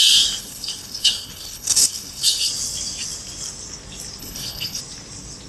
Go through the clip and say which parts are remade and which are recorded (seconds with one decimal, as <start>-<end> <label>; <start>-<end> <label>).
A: 0.0-0.4 recorded; 0.4-2.5 remade; 2.5-4.2 recorded; 4.2-4.8 remade; 4.8-5.5 recorded